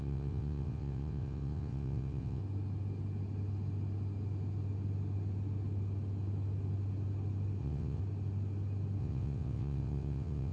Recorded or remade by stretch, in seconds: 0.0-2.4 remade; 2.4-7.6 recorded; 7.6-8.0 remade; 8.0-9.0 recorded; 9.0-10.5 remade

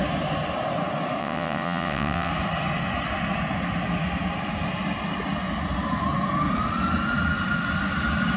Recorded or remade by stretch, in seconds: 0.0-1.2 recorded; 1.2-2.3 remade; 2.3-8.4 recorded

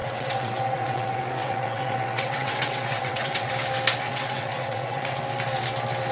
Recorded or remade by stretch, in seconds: 0.0-3.5 remade; 3.5-4.1 recorded; 4.1-5.2 remade; 5.2-6.1 recorded

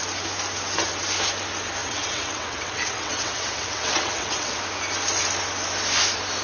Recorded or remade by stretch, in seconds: 0.0-1.8 recorded; 1.8-4.6 remade; 4.6-6.4 recorded

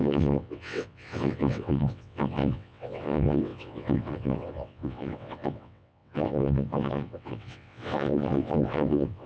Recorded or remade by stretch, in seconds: 0.0-9.3 remade